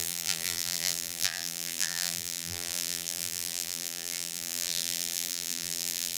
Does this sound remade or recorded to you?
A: remade